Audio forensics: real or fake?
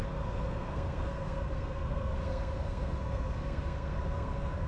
fake